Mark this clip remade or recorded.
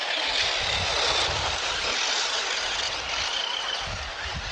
recorded